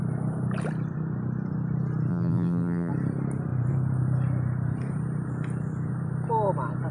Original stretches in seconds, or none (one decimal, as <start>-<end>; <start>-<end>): 0.0-2.1; 2.9-6.9